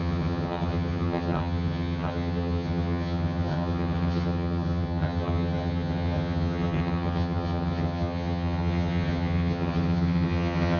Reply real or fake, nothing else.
fake